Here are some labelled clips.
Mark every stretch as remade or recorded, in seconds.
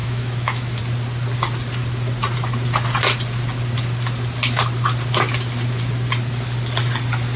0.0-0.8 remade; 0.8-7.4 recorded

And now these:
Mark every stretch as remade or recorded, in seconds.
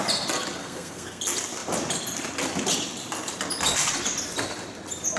0.0-0.6 recorded; 0.6-1.2 remade; 1.2-5.2 recorded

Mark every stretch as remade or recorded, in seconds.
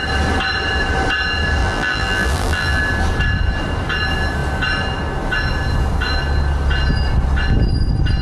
0.0-1.6 recorded; 1.6-2.8 remade; 2.8-8.2 recorded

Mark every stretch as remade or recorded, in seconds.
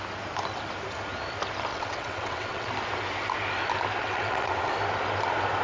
0.0-1.7 recorded; 1.7-2.7 remade; 2.7-4.0 recorded; 4.0-4.7 remade; 4.7-5.6 recorded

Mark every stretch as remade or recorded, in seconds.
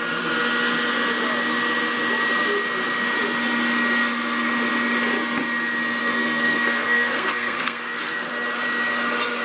0.0-6.0 recorded; 6.0-8.3 remade; 8.3-9.4 recorded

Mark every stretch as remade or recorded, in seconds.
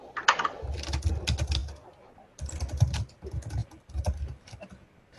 0.0-3.6 recorded; 3.6-5.2 remade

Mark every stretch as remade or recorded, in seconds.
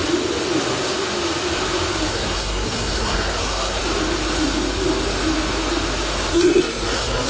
0.0-2.1 recorded; 2.1-3.8 remade; 3.8-6.3 recorded; 6.3-7.3 remade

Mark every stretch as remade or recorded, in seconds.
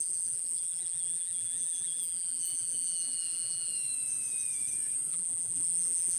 0.0-3.7 remade; 3.7-5.1 recorded; 5.1-6.2 remade